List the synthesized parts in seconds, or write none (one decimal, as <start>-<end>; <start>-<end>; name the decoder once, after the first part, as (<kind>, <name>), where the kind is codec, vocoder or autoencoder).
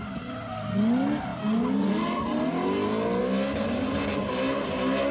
none